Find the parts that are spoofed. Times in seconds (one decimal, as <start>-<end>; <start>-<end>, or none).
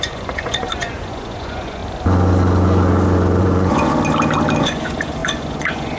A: 0.0-1.8; 3.4-3.9; 4.6-6.0